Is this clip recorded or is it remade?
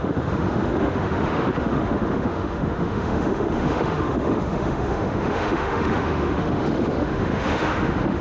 remade